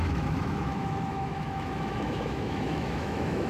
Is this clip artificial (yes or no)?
yes